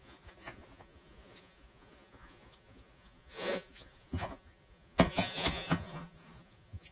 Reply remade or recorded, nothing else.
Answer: remade